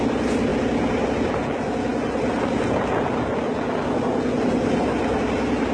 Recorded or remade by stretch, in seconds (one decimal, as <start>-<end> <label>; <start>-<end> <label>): 0.0-5.7 recorded